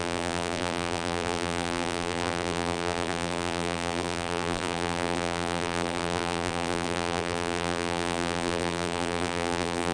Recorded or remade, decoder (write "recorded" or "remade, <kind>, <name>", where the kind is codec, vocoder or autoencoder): remade, vocoder, BigVGAN v2